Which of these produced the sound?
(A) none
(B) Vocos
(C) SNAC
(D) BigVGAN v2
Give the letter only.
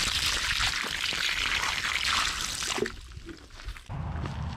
A